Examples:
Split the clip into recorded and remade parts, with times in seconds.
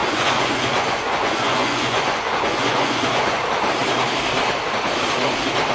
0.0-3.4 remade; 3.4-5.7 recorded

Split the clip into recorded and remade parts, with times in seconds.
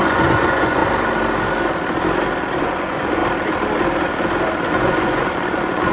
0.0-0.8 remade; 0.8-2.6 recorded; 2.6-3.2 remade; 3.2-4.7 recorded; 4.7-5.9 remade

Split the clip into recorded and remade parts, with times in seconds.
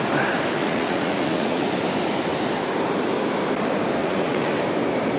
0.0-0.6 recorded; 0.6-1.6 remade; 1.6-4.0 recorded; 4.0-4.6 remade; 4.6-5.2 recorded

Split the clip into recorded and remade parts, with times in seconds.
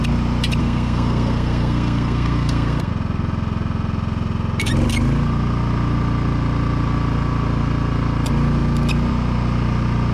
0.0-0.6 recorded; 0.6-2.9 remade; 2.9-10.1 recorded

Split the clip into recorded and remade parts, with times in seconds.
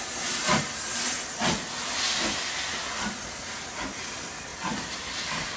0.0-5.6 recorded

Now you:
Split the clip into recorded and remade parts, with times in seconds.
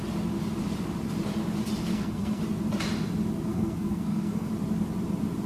0.0-1.9 recorded; 1.9-2.4 remade; 2.4-3.5 recorded; 3.5-4.5 remade; 4.5-5.5 recorded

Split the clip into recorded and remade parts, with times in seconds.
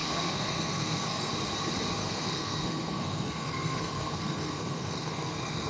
0.0-1.3 remade; 1.3-2.0 recorded; 2.0-5.7 remade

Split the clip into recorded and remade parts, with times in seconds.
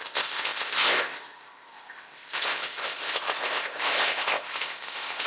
0.0-5.3 remade